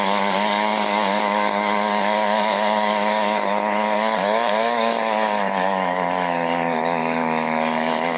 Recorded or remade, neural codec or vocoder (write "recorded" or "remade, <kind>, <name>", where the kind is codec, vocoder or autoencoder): remade, codec, DAC